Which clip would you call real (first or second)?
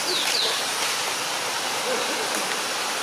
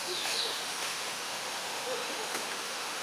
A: first